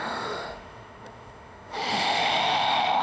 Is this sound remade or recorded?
remade